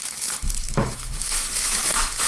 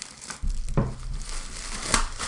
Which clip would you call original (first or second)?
second